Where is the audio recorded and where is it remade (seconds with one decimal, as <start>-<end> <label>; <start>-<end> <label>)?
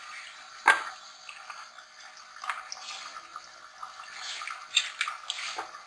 0.0-5.9 recorded